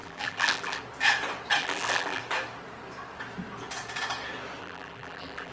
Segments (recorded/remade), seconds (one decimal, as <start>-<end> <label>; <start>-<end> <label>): 0.0-0.8 remade; 0.8-1.6 recorded; 1.6-2.2 remade; 2.2-4.6 recorded; 4.6-5.5 remade